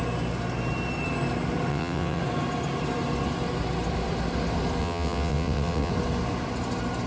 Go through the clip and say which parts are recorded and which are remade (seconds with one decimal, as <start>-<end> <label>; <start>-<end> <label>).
0.0-1.7 recorded; 1.7-2.2 remade; 2.2-4.8 recorded; 4.8-5.9 remade; 5.9-7.1 recorded